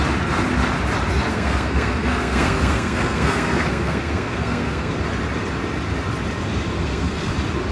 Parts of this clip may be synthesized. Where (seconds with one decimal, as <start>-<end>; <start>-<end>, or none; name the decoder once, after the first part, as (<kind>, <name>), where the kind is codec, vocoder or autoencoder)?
1.3-4.9 (codec, SNAC); 6.7-7.3